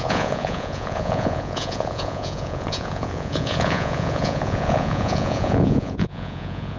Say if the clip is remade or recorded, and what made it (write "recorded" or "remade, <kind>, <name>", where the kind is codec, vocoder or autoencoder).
remade, vocoder, Vocos